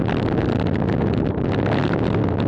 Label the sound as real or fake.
real